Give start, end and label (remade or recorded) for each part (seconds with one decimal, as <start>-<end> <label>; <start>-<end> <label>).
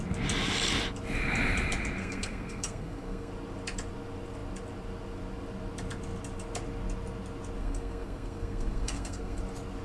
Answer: 0.0-2.0 recorded; 2.0-3.3 remade; 3.3-7.6 recorded; 7.6-9.4 remade; 9.4-9.8 recorded